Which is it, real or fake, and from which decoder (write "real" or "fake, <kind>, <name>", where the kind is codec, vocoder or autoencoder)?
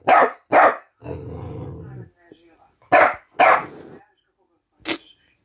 real